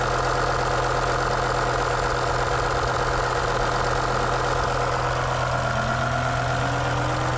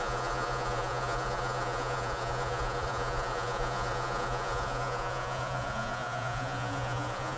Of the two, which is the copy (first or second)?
second